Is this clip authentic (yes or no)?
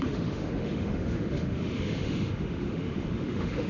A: no